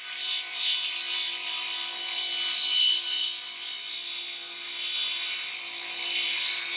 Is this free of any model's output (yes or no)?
yes